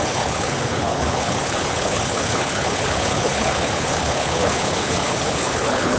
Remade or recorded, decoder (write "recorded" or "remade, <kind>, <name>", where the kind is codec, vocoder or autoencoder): remade, codec, HILCodec